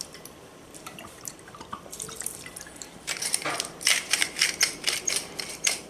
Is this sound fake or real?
fake